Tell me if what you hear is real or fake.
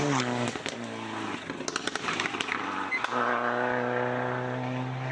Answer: real